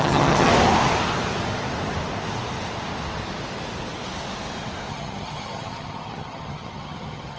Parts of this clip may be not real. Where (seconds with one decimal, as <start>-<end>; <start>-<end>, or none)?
0.0-0.5; 4.9-7.4